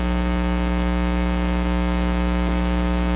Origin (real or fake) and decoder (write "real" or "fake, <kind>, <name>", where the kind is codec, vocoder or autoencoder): fake, autoencoder, DAC-VAE